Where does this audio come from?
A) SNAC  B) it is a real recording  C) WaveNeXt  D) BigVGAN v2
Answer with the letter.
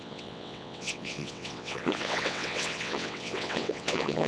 C